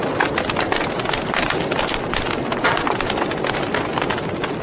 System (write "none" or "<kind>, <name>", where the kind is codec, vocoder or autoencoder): none